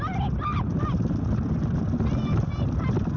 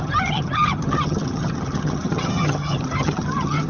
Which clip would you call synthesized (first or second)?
second